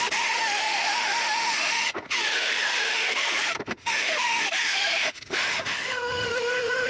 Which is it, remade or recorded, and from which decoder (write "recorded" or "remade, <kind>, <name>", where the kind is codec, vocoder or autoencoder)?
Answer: remade, autoencoder, DAC-VAE